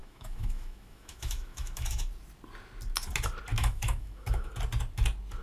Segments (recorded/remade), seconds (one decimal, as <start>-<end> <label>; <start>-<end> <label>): 0.0-2.1 remade; 2.1-3.5 recorded; 3.5-4.5 remade; 4.5-5.4 recorded

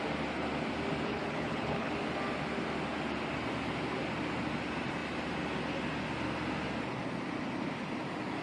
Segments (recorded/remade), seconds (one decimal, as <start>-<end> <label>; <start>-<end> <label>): 0.0-1.1 recorded; 1.1-1.9 remade; 1.9-8.4 recorded